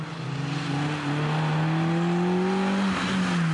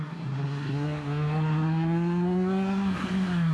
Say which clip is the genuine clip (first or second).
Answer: first